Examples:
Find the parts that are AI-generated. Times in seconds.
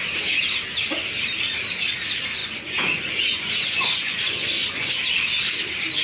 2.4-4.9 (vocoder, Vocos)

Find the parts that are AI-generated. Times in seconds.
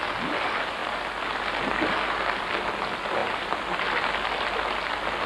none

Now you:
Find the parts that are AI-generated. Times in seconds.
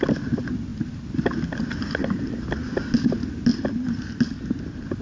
none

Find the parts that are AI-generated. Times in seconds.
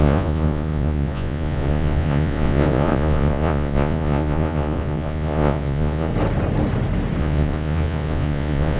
0.0-6.1 (vocoder, Vocos); 7.2-8.8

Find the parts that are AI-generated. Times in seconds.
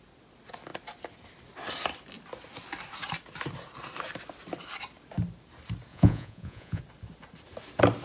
5.9-6.8 (vocoder, Vocos)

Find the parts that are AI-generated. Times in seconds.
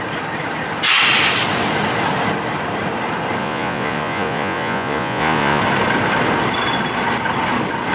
3.4-5.6 (vocoder, Vocos)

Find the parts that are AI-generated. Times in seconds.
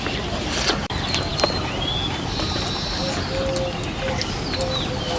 none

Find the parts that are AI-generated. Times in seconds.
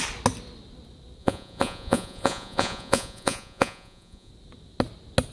1.2-4.3 (vocoder, Vocos)